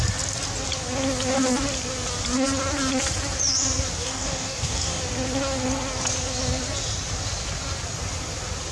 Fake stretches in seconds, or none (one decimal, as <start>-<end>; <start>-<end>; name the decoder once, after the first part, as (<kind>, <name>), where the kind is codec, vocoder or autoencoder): 4.0-5.0 (codec, DAC)